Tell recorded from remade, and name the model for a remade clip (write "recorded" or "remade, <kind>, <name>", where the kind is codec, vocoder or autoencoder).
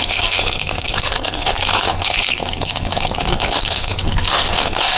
remade, codec, SNAC